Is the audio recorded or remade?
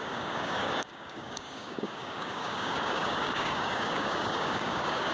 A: remade